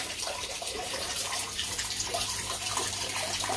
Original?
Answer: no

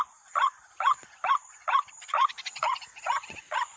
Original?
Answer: no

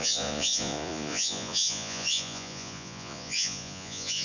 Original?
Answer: no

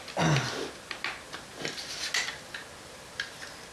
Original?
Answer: yes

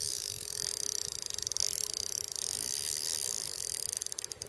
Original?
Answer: yes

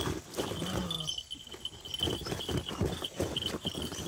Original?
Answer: yes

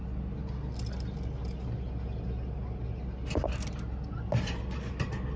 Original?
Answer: yes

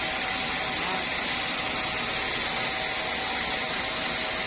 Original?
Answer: yes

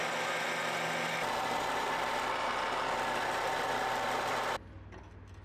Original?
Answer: yes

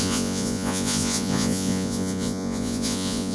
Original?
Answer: no